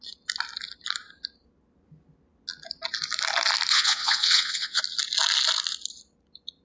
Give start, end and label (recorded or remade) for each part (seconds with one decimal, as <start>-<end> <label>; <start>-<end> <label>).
0.0-3.7 recorded; 3.7-4.8 remade; 4.8-6.6 recorded